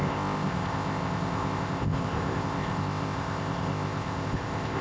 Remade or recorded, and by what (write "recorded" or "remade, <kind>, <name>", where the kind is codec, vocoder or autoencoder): remade, codec, ZipCodec